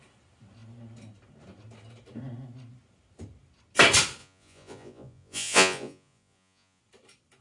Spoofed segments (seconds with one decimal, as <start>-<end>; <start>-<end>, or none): 4.2-6.8